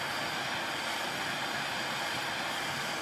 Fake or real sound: real